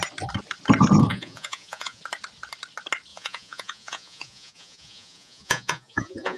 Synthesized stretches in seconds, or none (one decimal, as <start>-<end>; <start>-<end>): 1.1-2.0; 3.1-6.4